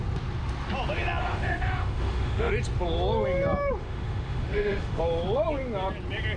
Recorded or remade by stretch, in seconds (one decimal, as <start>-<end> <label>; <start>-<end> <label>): 0.0-1.2 recorded; 1.2-2.5 remade; 2.5-3.8 recorded; 3.8-5.0 remade; 5.0-6.4 recorded